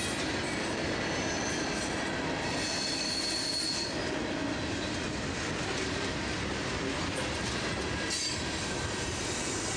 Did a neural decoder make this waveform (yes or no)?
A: no